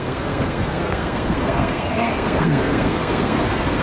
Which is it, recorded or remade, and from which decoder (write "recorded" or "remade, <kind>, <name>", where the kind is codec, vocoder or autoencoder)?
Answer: remade, codec, SNAC